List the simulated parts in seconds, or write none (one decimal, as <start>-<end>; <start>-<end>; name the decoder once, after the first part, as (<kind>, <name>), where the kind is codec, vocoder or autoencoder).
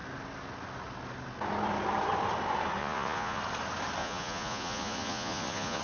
2.8-3.4 (vocoder, Vocos); 4.0-5.8